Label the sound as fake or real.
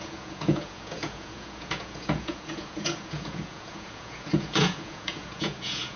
fake